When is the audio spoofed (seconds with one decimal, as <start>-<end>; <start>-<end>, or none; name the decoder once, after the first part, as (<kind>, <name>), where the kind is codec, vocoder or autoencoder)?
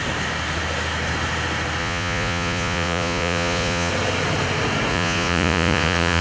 1.8-3.9 (vocoder, Vocos); 4.9-6.2